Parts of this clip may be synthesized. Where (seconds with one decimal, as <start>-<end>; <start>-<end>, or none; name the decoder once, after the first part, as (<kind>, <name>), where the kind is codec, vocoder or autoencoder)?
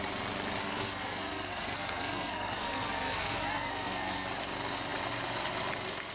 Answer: 0.6-4.3 (codec, SNAC)